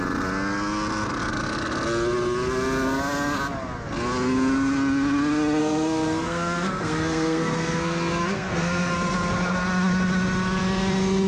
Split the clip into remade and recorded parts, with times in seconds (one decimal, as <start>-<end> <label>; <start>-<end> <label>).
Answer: 0.0-5.6 recorded; 5.6-8.9 remade; 8.9-11.3 recorded